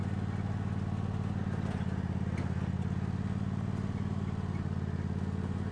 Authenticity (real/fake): real